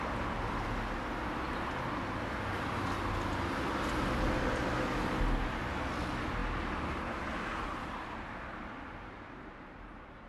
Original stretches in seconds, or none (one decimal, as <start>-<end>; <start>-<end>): 0.0-10.3